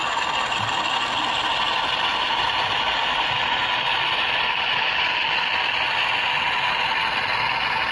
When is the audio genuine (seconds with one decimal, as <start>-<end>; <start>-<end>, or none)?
0.0-2.1; 5.2-7.9